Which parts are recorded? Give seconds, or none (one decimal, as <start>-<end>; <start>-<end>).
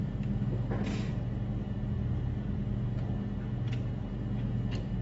0.0-5.0